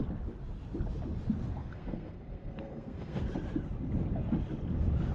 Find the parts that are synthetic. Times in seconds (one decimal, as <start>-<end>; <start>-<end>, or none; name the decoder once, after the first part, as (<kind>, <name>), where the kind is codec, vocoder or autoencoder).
1.6-3.2 (codec, SNAC)